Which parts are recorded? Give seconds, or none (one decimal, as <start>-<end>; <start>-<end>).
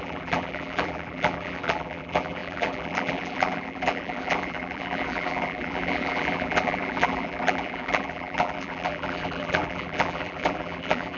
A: none